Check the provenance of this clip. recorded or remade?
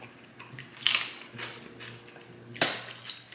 recorded